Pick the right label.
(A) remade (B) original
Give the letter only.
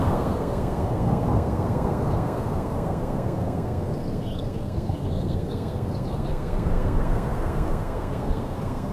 A